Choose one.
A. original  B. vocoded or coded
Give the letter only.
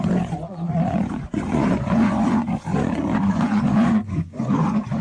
B